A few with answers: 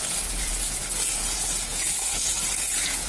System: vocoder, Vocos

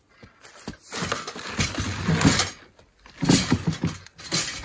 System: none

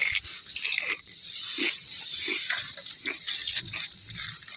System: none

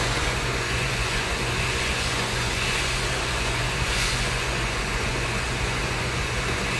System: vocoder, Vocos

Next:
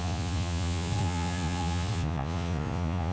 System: vocoder, Vocos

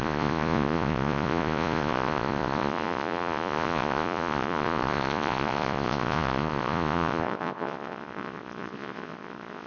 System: vocoder, Vocos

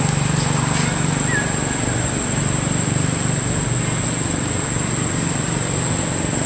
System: none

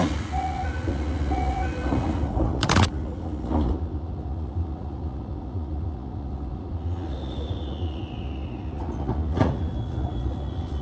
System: vocoder, Vocos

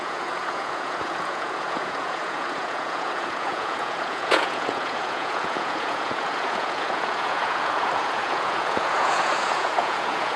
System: vocoder, Vocos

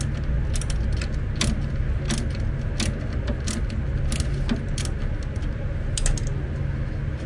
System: none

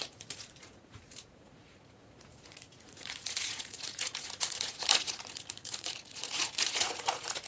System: vocoder, Vocos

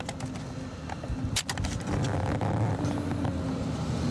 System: none